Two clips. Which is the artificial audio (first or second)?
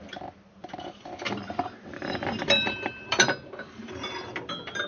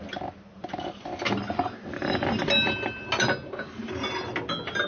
first